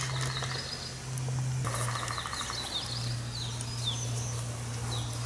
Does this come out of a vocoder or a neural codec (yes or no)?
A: no